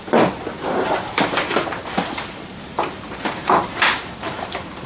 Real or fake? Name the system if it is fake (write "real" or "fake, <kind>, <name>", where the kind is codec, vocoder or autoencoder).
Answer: fake, vocoder, BigVGAN v2